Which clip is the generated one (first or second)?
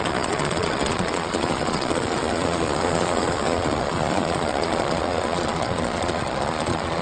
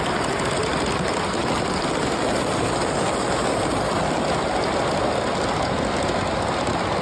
first